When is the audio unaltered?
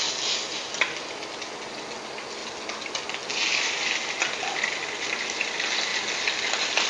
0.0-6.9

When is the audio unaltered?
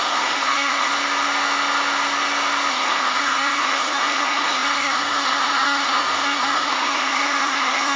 0.9-2.7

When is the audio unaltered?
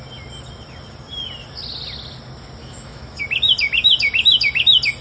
0.0-2.6; 3.2-5.0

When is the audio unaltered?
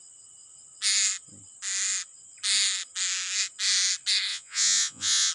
0.0-4.3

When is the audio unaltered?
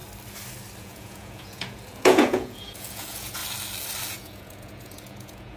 0.0-0.8; 3.4-4.1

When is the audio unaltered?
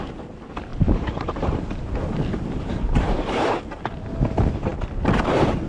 0.0-0.7; 3.8-5.7